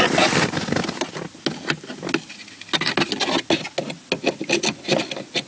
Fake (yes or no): no